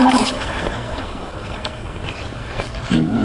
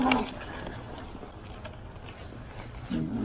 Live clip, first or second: second